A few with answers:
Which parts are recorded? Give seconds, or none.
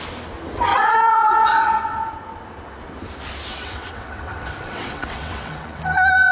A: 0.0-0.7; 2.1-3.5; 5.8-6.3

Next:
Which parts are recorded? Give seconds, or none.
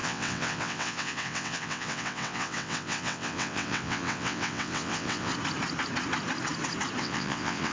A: 5.3-7.0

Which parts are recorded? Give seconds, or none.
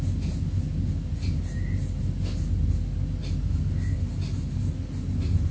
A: 0.0-5.5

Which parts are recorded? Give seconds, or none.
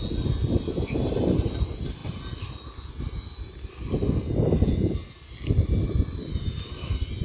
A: 0.0-7.2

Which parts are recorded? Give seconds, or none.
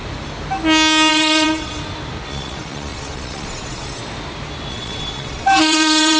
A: 0.0-1.1; 1.8-2.3; 4.0-4.7